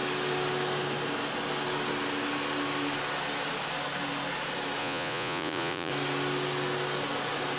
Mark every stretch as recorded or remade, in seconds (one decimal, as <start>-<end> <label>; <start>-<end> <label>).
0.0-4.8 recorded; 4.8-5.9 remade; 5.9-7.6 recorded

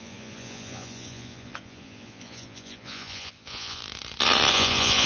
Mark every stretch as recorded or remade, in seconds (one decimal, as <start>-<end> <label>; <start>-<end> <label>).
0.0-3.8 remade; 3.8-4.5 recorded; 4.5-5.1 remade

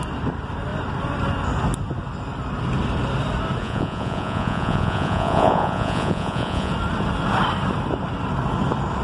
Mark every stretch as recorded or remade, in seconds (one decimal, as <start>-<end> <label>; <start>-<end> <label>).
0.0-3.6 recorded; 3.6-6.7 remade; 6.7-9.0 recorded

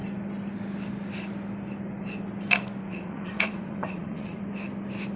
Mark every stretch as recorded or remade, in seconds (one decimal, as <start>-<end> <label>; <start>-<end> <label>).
0.0-2.8 recorded; 2.8-4.4 remade; 4.4-5.2 recorded